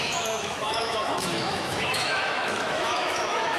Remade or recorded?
remade